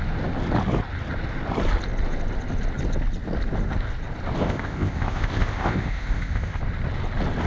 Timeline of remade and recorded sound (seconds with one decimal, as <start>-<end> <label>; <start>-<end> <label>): 0.0-4.4 recorded; 4.4-6.6 remade; 6.6-7.5 recorded